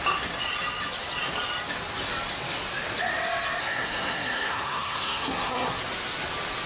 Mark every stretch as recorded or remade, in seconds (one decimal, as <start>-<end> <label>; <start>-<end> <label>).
0.0-3.6 recorded; 3.6-5.8 remade; 5.8-6.7 recorded